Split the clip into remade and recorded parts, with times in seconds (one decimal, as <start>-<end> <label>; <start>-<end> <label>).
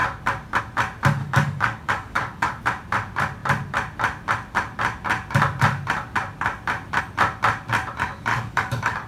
0.0-1.2 recorded; 1.2-2.6 remade; 2.6-8.3 recorded; 8.3-9.1 remade